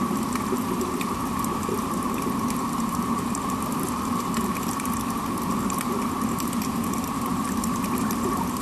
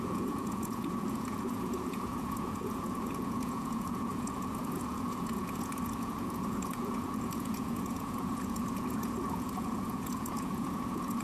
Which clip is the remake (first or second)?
second